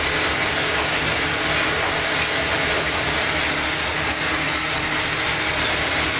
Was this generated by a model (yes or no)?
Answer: no